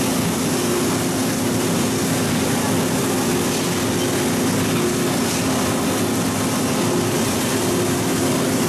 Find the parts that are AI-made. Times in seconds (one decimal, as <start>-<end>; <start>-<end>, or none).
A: none